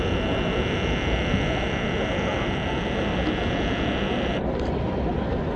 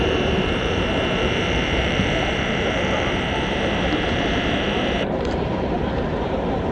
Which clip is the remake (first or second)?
second